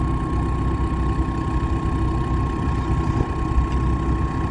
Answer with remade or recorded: recorded